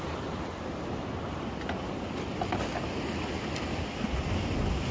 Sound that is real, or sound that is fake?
real